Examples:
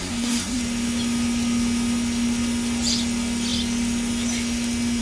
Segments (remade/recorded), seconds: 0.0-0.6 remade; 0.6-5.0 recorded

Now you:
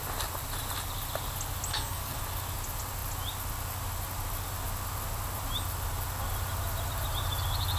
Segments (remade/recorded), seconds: 0.0-1.7 recorded; 1.7-2.2 remade; 2.2-7.8 recorded

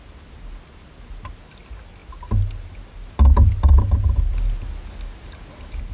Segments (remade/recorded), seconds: 0.0-5.9 recorded

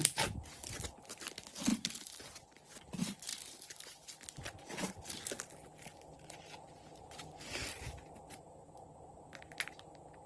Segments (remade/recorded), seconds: 0.0-10.3 recorded